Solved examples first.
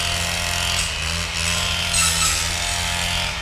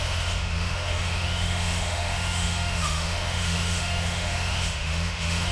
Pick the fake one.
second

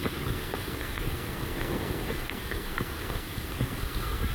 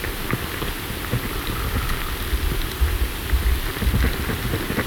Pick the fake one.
first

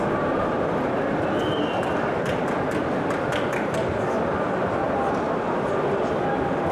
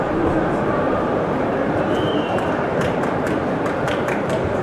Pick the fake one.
second